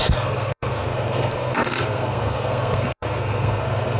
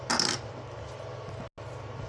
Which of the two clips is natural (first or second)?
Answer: second